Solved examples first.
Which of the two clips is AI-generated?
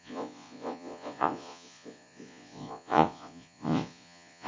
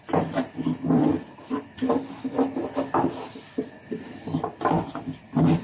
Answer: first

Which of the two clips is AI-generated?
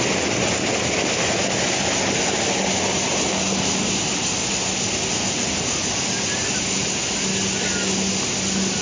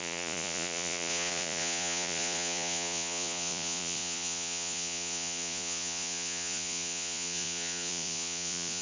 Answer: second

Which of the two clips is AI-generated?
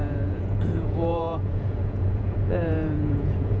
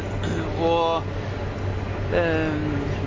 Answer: first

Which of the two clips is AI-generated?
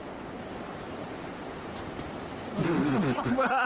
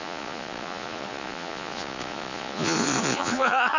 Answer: second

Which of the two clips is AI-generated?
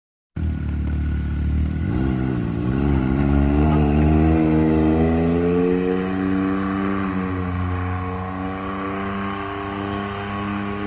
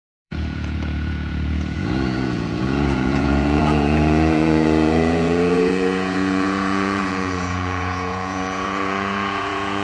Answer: second